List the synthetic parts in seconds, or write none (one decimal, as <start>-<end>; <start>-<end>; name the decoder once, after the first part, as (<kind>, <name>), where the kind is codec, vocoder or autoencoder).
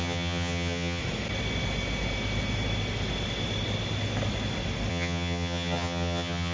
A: 0.0-1.0 (vocoder, HiFi-GAN); 4.9-6.5